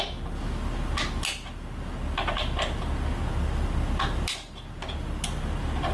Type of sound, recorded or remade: recorded